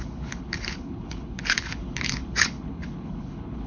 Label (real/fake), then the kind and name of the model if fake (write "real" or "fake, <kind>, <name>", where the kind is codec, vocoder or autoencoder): fake, codec, HILCodec